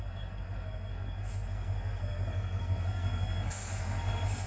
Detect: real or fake fake